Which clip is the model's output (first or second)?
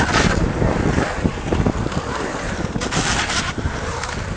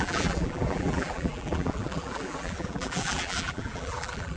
second